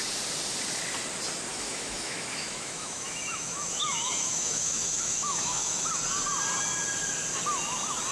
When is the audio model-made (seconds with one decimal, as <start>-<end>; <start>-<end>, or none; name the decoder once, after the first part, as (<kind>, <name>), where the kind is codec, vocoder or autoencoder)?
1.5-5.8 (autoencoder, DAC-VAE)